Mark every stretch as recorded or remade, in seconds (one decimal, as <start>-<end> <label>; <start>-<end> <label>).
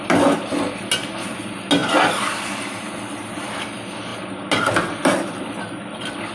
0.0-6.3 recorded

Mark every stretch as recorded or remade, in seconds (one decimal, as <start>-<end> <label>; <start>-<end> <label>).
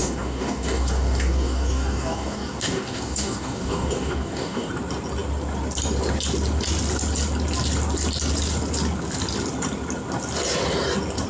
0.0-4.7 remade; 4.7-11.3 recorded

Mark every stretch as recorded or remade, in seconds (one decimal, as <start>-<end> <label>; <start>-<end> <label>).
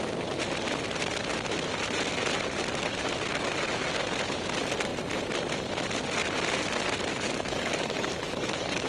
0.0-7.1 recorded; 7.1-8.9 remade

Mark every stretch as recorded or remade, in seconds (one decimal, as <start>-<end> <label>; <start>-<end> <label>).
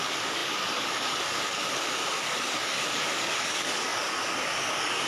0.0-5.1 remade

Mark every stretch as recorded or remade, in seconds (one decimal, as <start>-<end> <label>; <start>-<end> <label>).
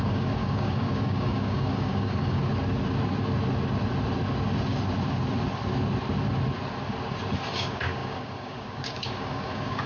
0.0-2.4 remade; 2.4-7.5 recorded; 7.5-9.9 remade